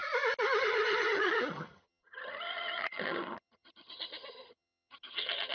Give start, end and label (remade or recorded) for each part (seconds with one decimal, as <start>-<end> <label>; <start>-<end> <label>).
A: 0.0-0.6 recorded; 0.6-5.5 remade